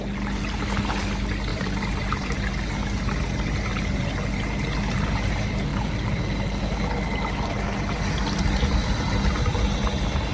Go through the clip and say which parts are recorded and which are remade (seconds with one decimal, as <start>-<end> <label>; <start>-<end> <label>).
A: 0.0-1.5 recorded; 1.5-2.4 remade; 2.4-5.7 recorded; 5.7-6.2 remade; 6.2-10.3 recorded